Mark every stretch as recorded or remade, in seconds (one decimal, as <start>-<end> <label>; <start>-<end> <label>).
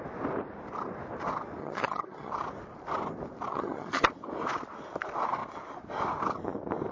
0.0-1.6 recorded; 1.6-2.3 remade; 2.3-3.5 recorded; 3.5-4.1 remade; 4.1-6.9 recorded